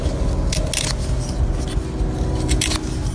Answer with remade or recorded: recorded